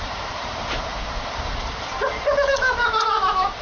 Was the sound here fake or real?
fake